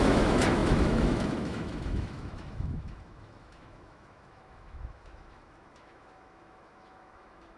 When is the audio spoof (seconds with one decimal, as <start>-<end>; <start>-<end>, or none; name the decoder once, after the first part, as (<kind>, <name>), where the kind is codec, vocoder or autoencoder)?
0.0-7.6 (autoencoder, DAC-VAE)